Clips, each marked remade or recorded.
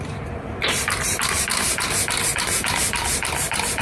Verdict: remade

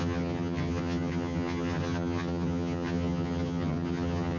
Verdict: remade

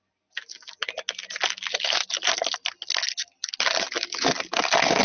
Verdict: recorded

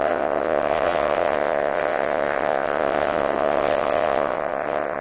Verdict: remade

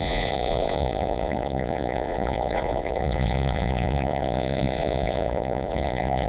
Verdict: remade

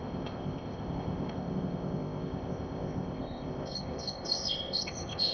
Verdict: remade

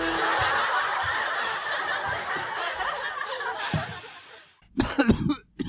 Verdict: recorded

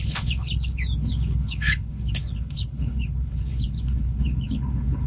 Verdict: remade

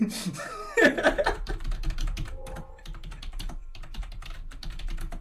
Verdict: remade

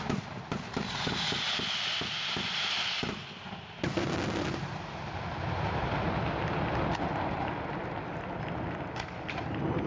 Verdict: recorded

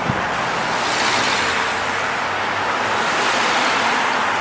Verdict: recorded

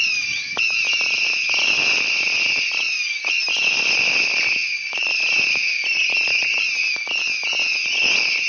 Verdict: recorded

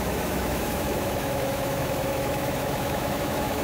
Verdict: remade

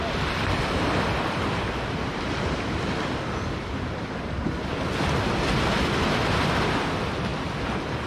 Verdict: recorded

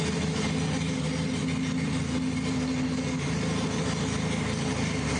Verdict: recorded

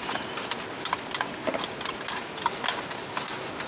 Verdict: recorded